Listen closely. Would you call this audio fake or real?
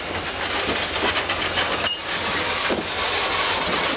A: real